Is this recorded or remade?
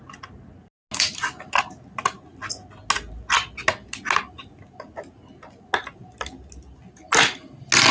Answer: recorded